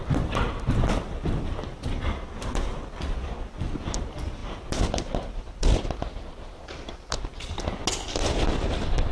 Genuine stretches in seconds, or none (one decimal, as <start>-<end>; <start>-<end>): 7.3-8.7